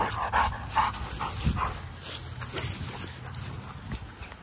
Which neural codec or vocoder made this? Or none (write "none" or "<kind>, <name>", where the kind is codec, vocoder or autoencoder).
none